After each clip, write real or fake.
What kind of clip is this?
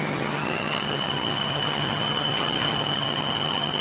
fake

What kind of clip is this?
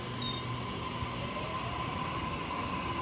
real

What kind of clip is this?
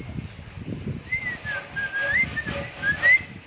real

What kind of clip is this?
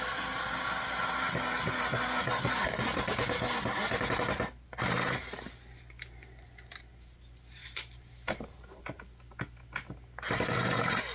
real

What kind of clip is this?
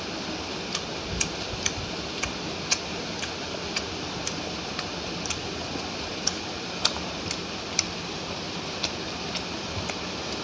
real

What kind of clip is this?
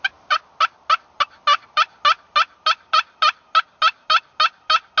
real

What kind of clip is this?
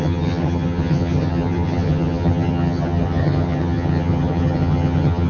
fake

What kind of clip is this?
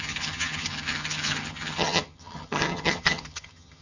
fake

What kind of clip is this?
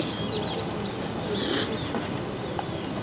real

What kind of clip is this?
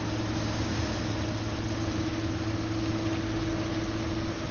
real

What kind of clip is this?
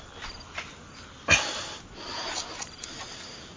real